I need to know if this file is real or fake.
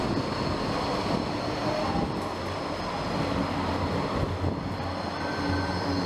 real